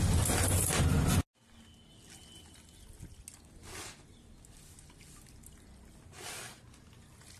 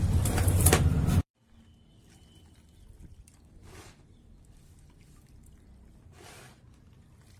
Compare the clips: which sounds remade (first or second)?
second